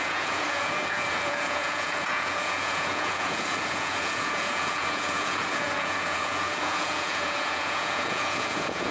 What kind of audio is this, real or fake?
fake